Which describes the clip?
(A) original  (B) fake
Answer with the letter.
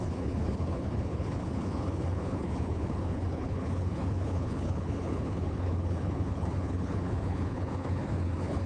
B